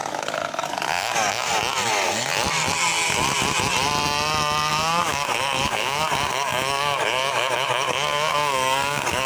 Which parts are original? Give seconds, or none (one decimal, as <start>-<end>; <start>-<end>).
1.5-4.7